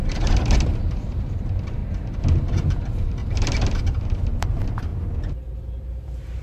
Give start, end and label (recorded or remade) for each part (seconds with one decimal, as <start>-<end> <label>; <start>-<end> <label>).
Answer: 0.0-1.8 remade; 1.8-2.5 recorded; 2.5-4.9 remade; 4.9-5.5 recorded; 5.5-6.4 remade

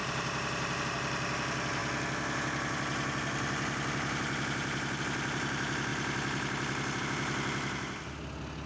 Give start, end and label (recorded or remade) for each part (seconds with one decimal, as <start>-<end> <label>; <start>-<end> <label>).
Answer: 0.0-8.7 recorded